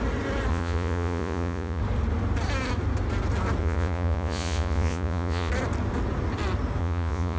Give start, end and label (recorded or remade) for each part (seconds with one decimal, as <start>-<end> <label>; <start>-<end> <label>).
0.0-0.5 recorded; 0.5-1.8 remade; 1.8-3.6 recorded; 3.6-5.5 remade; 5.5-6.8 recorded; 6.8-7.4 remade